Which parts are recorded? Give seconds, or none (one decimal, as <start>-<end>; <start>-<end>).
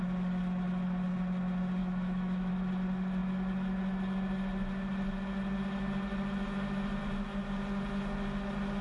0.0-1.8; 2.5-8.8